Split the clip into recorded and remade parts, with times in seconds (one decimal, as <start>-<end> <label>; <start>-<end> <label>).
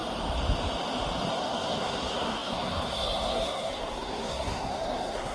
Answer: 0.0-1.3 recorded; 1.3-5.3 remade